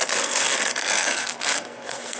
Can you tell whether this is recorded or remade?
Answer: remade